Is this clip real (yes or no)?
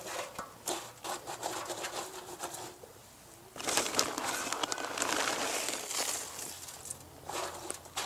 yes